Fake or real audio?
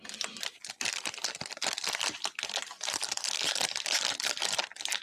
fake